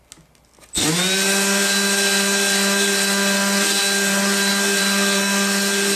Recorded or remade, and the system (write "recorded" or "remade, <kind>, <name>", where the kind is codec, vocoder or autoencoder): recorded